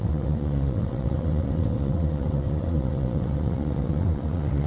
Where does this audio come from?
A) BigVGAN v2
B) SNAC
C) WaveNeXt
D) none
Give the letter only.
C